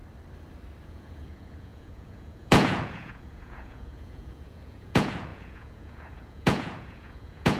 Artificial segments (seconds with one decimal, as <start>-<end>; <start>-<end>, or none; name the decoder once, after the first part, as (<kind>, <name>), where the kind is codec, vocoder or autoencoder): 0.8-7.6 (vocoder, Vocos)

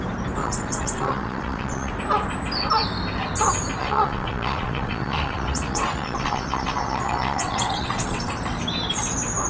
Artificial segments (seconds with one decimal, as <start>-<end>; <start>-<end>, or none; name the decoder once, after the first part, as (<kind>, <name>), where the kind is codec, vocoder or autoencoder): 0.4-1.9 (vocoder, WaveNeXt); 3.8-8.3

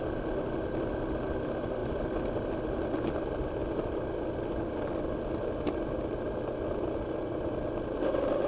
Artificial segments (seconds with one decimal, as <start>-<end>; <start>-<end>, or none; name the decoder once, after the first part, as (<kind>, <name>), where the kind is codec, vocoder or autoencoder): none

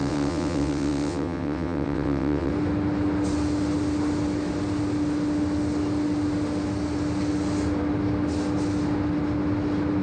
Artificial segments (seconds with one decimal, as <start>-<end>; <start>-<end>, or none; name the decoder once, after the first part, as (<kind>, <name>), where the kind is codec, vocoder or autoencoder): 0.0-2.5 (vocoder, WaveNeXt)